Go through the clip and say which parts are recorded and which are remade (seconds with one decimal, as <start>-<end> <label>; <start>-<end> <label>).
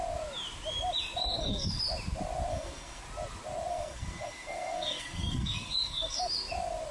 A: 0.0-1.2 recorded; 1.2-1.8 remade; 1.8-2.5 recorded; 2.5-3.0 remade; 3.0-3.7 recorded; 3.7-6.2 remade; 6.2-6.9 recorded